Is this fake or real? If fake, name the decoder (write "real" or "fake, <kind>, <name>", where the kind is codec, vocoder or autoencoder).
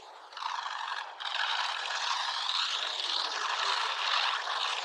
real